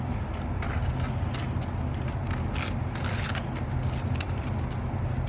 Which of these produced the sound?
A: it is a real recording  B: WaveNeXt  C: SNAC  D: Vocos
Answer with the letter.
A